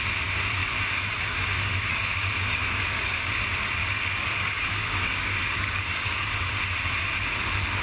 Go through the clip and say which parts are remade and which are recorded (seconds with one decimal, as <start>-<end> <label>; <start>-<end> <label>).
0.0-0.6 recorded; 0.6-3.4 remade; 3.4-3.8 recorded; 3.8-6.5 remade; 6.5-7.8 recorded